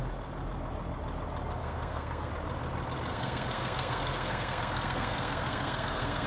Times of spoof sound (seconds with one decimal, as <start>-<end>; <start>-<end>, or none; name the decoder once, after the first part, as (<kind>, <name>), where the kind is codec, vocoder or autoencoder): 1.6-2.3 (codec, SNAC); 3.1-6.3